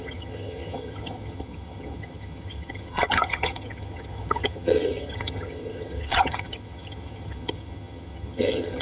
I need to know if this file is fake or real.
fake